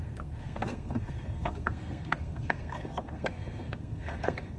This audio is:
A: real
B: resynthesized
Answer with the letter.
B